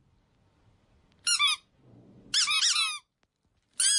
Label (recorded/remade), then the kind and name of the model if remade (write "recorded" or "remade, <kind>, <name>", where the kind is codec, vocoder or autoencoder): recorded